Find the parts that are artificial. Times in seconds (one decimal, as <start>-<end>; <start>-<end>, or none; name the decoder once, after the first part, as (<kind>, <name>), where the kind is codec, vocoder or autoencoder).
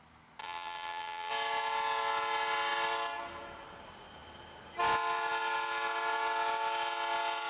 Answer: 0.4-1.3 (vocoder, BigVGAN v2)